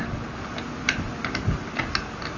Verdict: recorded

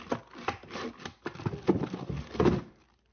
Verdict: recorded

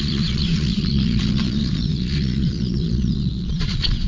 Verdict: remade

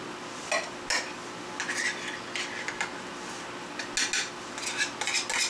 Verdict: recorded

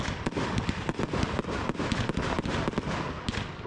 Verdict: recorded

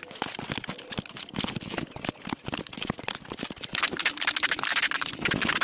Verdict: recorded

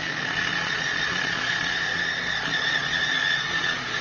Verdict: remade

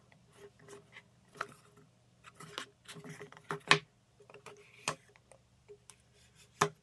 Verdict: recorded